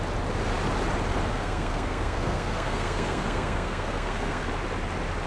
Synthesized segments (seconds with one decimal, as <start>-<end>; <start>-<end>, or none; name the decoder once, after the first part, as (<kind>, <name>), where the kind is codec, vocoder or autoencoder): 1.3-4.5 (codec, SNAC)